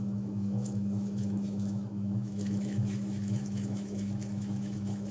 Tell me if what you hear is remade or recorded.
remade